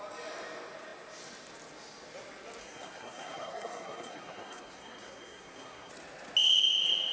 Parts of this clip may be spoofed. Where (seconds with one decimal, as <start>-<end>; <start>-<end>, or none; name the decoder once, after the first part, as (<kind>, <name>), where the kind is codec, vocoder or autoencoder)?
2.6-5.9 (codec, SNAC)